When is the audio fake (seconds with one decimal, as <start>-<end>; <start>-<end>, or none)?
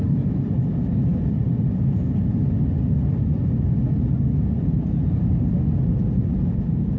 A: none